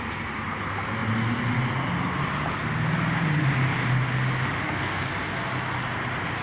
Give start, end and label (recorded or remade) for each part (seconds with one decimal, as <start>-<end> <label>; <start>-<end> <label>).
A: 0.0-4.6 recorded; 4.6-5.1 remade; 5.1-6.4 recorded